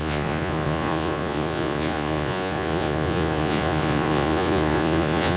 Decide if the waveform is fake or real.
fake